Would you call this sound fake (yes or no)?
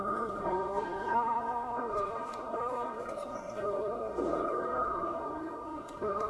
yes